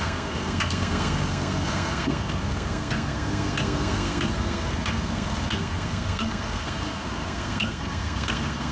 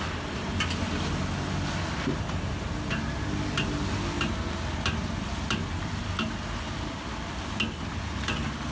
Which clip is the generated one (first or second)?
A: first